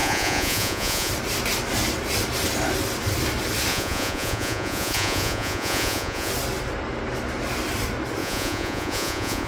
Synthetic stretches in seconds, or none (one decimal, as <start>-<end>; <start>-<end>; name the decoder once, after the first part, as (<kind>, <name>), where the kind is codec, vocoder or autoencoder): 0.0-1.1 (vocoder, Vocos); 3.7-6.3; 8.2-9.5